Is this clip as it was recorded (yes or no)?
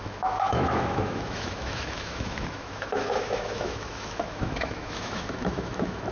no